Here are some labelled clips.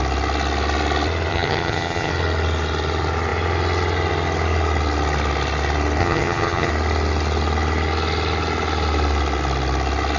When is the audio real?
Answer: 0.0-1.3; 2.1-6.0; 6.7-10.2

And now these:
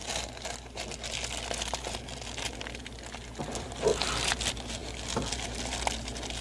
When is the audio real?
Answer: 0.0-6.4

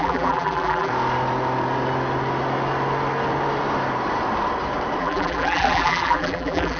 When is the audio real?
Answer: 0.9-5.0

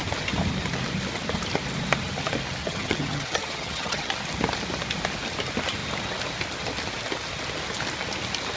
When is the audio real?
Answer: 0.0-2.6; 4.1-8.6